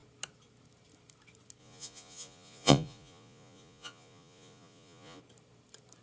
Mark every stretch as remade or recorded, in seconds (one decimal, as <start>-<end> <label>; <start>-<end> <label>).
0.0-1.6 recorded; 1.6-5.2 remade; 5.2-6.0 recorded